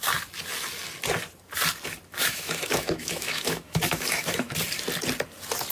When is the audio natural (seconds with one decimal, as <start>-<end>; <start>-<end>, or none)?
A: 0.0-2.1; 4.5-5.7